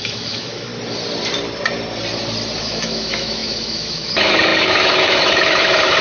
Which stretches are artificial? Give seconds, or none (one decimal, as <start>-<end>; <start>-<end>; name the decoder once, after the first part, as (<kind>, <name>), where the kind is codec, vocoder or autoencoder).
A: 0.0-0.7 (autoencoder, DAC-VAE); 2.6-6.0